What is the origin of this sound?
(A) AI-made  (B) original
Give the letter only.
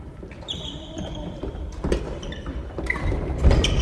A